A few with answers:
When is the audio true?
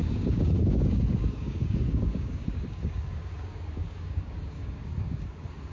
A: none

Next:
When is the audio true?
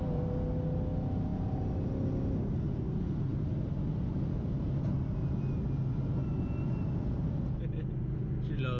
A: 0.0-8.8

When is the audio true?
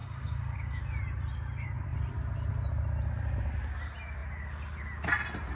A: 0.8-5.6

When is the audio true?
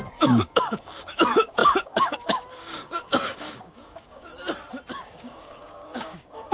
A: 4.3-4.9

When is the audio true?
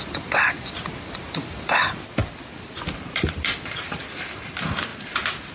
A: 0.0-5.5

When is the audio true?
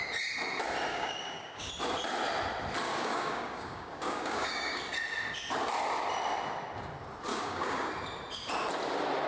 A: 0.0-0.9; 1.7-2.9; 4.8-7.3; 7.9-9.3